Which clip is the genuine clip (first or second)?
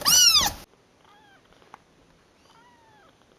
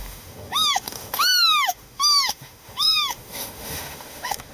first